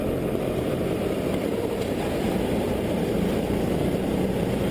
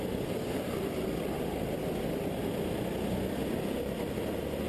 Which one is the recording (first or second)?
second